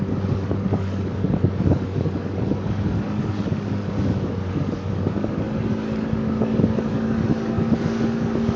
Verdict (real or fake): fake